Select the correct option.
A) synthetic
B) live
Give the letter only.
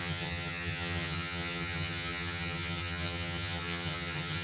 A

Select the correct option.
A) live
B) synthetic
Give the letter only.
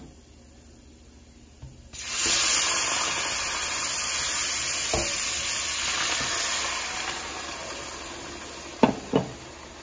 A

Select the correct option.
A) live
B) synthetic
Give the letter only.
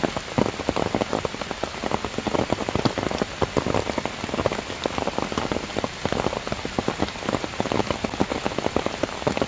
A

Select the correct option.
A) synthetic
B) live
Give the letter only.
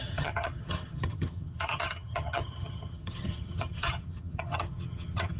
A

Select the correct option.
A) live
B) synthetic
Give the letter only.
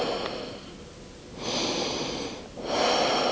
A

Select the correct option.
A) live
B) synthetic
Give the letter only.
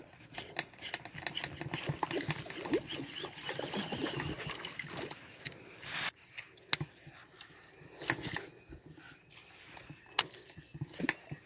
A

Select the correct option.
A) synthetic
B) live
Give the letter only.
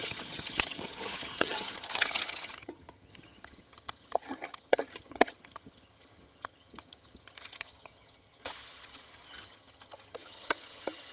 A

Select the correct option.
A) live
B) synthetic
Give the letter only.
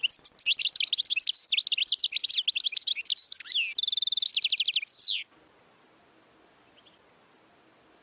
A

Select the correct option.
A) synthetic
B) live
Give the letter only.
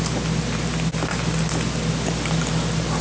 B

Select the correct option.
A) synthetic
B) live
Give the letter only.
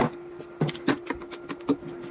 B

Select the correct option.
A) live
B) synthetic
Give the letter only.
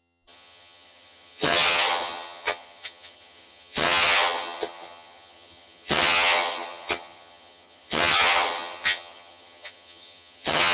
B